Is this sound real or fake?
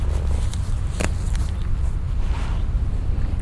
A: real